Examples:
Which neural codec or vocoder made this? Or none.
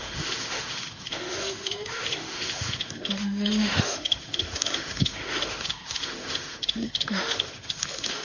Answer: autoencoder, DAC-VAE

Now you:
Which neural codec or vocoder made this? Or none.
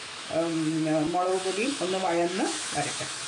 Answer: autoencoder, DAC-VAE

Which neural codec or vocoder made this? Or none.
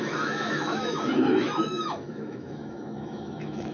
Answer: autoencoder, DAC-VAE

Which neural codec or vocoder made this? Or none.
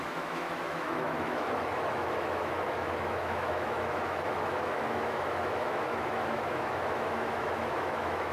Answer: autoencoder, DAC-VAE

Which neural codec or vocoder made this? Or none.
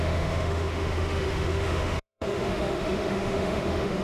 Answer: autoencoder, DAC-VAE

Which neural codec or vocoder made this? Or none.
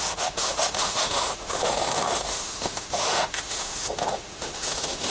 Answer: autoencoder, DAC-VAE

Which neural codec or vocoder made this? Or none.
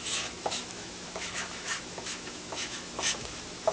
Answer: autoencoder, DAC-VAE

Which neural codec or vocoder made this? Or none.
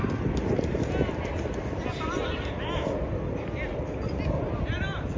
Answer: none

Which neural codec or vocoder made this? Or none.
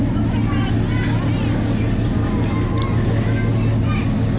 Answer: none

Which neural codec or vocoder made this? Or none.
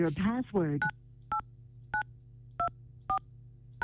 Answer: none